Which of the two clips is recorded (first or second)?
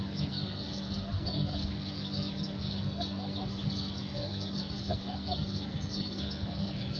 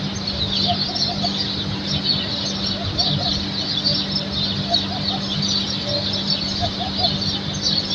second